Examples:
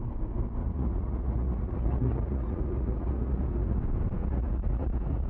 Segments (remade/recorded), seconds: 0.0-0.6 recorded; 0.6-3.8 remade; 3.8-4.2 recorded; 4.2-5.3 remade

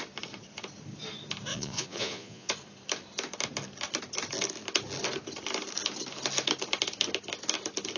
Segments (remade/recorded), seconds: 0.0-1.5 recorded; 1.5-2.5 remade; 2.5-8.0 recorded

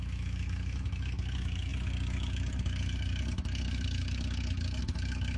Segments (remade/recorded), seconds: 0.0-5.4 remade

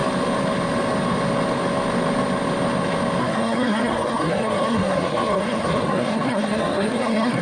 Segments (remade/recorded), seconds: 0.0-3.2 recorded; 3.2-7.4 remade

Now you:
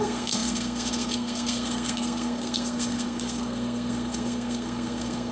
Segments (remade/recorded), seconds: 0.0-5.3 remade